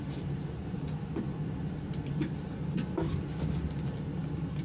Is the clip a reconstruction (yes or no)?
no